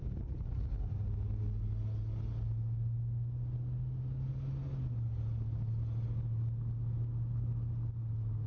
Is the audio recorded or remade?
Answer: recorded